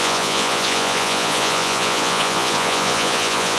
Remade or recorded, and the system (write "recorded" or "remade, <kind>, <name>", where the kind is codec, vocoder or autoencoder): remade, vocoder, Vocos